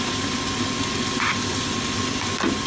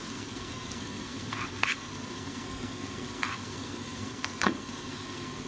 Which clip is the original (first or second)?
first